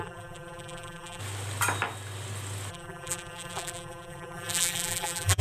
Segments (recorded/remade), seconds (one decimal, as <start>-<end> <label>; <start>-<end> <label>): 0.0-1.2 remade; 1.2-2.7 recorded; 2.7-5.4 remade